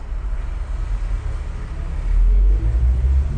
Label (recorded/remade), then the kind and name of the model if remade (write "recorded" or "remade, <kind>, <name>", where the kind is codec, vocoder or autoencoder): recorded